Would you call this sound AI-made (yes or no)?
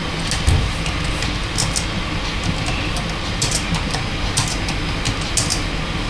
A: no